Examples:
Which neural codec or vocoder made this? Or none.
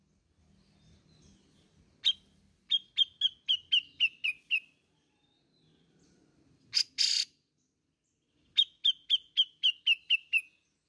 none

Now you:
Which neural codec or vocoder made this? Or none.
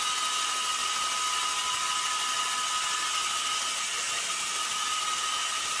none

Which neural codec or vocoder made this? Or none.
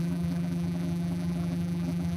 vocoder, BigVGAN v2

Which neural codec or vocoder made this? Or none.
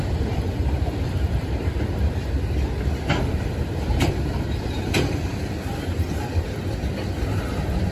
none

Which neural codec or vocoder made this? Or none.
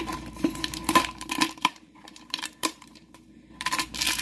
vocoder, BigVGAN v2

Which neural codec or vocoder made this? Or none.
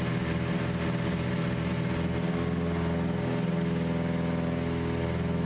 none